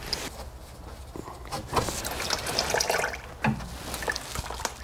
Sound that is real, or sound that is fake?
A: real